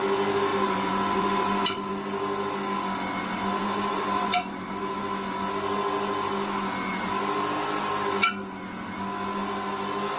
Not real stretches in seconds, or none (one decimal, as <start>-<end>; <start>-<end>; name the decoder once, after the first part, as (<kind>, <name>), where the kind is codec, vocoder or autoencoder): 0.5-1.9 (vocoder, BigVGAN v2); 3.6-5.0